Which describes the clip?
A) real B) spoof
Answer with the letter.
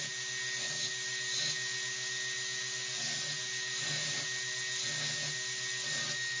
A